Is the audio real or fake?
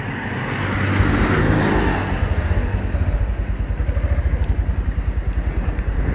real